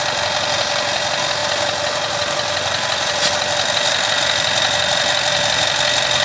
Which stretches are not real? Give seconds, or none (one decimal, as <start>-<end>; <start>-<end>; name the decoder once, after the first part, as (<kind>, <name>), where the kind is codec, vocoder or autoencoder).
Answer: none